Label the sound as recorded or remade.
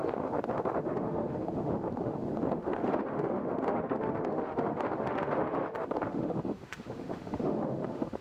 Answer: remade